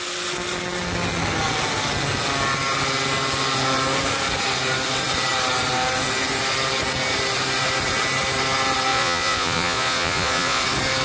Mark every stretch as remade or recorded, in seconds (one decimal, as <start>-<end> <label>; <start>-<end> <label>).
0.0-8.9 recorded; 8.9-10.6 remade; 10.6-11.0 recorded